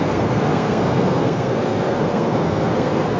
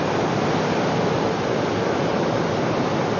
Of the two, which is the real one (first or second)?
second